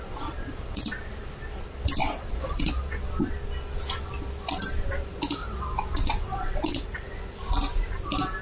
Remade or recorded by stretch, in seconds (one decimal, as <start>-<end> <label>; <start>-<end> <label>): 0.0-0.4 recorded; 0.4-0.9 remade; 0.9-2.0 recorded; 2.0-2.8 remade; 2.8-5.4 recorded; 5.4-7.2 remade; 7.2-8.4 recorded